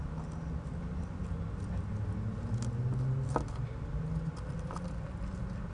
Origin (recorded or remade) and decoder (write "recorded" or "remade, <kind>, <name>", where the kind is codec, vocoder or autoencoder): recorded